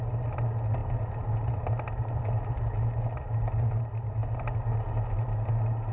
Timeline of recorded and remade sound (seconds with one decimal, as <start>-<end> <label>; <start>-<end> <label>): 0.0-5.9 recorded